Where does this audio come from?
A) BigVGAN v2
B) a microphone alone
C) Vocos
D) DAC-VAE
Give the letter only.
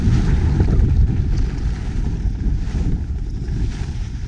B